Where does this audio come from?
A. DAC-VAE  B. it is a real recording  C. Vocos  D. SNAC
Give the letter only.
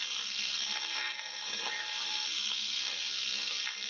D